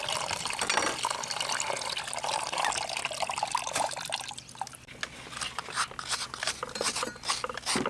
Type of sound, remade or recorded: recorded